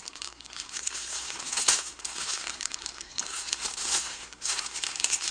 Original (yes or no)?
no